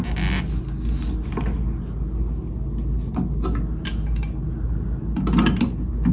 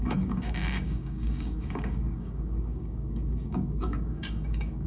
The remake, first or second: second